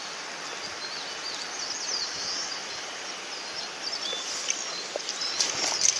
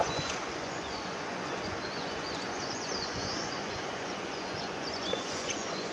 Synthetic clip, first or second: second